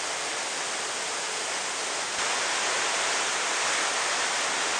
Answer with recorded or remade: recorded